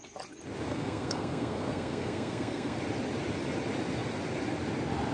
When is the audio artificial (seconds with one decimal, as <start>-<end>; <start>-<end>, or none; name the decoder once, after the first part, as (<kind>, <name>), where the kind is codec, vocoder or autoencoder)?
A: 0.7-2.8 (codec, SNAC)